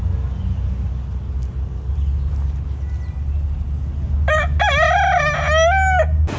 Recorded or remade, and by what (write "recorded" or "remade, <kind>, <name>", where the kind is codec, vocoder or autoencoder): recorded